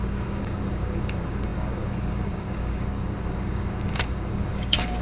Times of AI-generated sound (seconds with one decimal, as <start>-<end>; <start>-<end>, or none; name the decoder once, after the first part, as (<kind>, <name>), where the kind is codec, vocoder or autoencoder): 0.0-5.0 (codec, DAC)